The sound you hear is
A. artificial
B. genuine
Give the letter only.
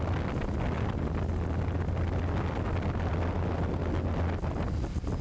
B